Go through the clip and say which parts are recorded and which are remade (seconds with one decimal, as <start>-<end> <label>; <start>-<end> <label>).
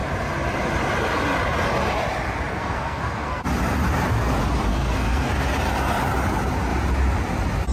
0.0-2.5 recorded; 2.5-3.4 remade; 3.4-4.7 recorded; 4.7-5.3 remade; 5.3-7.7 recorded